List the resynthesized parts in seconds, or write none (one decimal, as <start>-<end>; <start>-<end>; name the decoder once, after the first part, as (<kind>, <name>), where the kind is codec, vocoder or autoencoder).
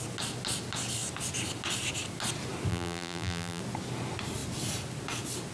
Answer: 2.7-3.6 (vocoder, BigVGAN v2)